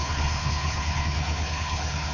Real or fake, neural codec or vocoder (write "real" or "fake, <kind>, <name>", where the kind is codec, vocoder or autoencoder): fake, codec, HILCodec